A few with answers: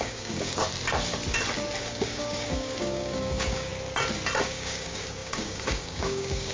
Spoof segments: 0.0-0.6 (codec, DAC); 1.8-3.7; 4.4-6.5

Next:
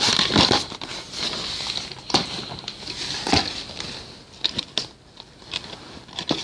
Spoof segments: none

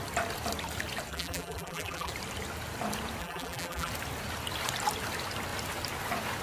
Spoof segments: 1.1-2.1 (vocoder, BigVGAN v2); 3.2-3.9

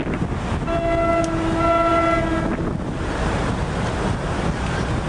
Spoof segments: none

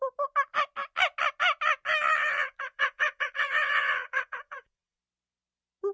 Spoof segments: 2.2-5.0 (vocoder, WaveNeXt)